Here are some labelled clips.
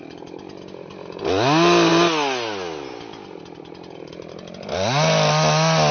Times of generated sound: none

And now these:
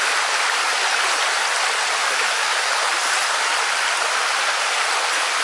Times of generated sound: 2.0-2.9